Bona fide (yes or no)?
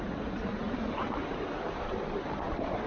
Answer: yes